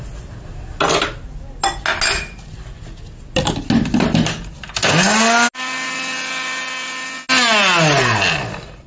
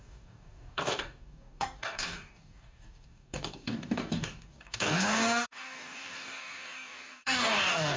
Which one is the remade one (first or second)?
second